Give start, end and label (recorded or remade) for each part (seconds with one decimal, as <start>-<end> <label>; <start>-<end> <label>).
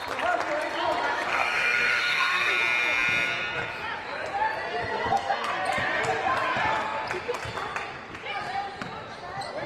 0.0-1.3 recorded; 1.3-2.5 remade; 2.5-4.8 recorded; 4.8-5.5 remade; 5.5-9.7 recorded